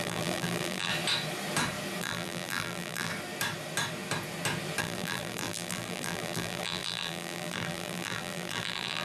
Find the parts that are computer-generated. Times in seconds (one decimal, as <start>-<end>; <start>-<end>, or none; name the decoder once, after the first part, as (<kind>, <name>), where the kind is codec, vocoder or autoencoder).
0.0-0.9 (vocoder, BigVGAN v2); 2.0-3.1; 4.8-9.0